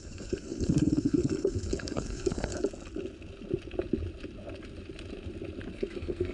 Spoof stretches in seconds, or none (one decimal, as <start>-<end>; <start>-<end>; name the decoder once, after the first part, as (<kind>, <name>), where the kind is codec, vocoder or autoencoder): 0.0-2.5 (codec, SNAC); 5.7-6.3